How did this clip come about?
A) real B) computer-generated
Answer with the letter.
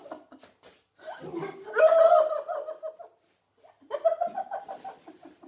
A